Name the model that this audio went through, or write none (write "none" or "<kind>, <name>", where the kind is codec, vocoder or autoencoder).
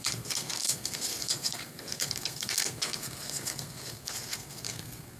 codec, SNAC